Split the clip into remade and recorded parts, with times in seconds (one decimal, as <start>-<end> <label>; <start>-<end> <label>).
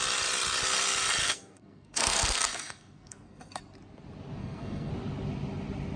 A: 0.0-1.2 recorded; 1.2-3.6 remade; 3.6-4.4 recorded; 4.4-4.9 remade; 4.9-6.0 recorded